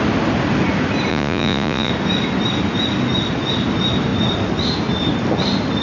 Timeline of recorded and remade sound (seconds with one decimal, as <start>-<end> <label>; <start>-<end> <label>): 0.0-1.1 recorded; 1.1-1.9 remade; 1.9-5.8 recorded